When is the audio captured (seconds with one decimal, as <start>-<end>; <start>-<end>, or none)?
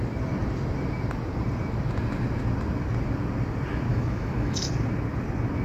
0.0-3.9; 4.7-5.6